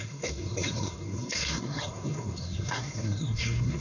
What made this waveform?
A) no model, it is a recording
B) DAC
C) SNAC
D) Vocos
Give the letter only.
C